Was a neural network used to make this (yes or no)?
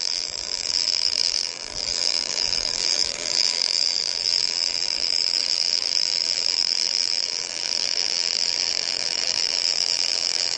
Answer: yes